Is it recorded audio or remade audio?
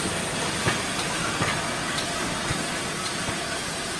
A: recorded